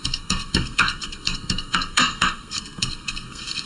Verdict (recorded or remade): remade